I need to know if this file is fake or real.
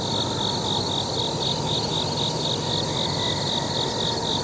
real